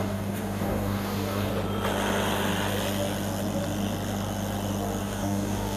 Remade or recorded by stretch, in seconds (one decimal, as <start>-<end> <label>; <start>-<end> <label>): 0.0-1.5 remade; 1.5-5.0 recorded; 5.0-5.8 remade

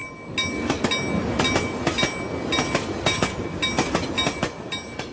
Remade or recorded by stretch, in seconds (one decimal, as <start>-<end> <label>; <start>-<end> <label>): 0.0-5.1 recorded

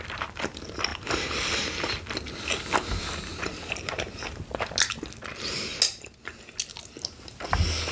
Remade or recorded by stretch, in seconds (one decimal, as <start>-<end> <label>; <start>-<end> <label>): 0.0-0.9 recorded; 0.9-1.9 remade; 1.9-3.3 recorded; 3.3-4.1 remade; 4.1-7.9 recorded

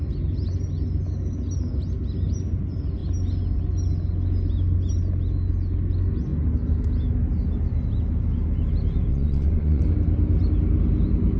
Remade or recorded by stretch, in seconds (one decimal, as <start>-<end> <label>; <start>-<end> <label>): 0.0-9.1 recorded; 9.1-9.8 remade; 9.8-11.4 recorded

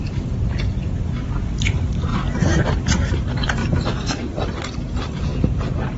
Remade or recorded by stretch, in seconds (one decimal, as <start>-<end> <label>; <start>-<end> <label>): 0.0-5.3 remade; 5.3-6.0 recorded

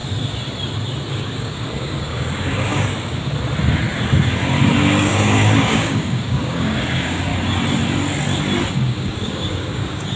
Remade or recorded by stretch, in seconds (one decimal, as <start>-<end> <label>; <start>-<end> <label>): 0.0-1.1 recorded; 1.1-3.2 remade; 3.2-4.8 recorded; 4.8-7.3 remade; 7.3-8.7 recorded; 8.7-10.2 remade

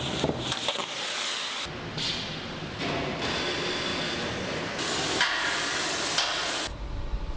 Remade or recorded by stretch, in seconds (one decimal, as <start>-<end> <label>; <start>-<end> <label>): 0.0-7.4 recorded

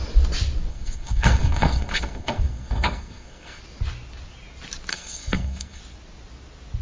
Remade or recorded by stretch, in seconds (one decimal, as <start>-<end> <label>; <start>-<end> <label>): 0.0-0.7 recorded; 0.7-3.6 remade; 3.6-4.9 recorded; 4.9-5.8 remade; 5.8-6.8 recorded